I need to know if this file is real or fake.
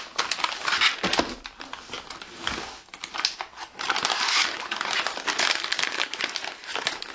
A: real